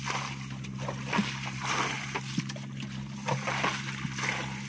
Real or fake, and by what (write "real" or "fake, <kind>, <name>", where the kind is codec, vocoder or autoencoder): real